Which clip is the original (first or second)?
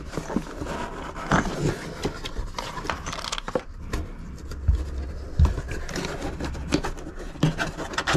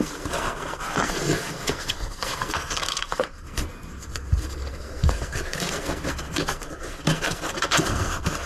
first